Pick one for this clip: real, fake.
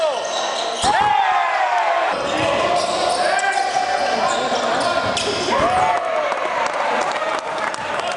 real